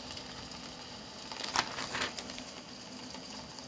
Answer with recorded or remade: recorded